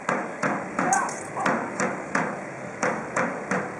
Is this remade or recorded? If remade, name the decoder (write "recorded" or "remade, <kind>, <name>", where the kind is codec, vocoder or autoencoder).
recorded